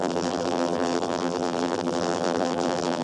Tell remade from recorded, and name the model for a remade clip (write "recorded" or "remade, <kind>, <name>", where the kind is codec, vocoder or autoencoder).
remade, vocoder, BigVGAN v2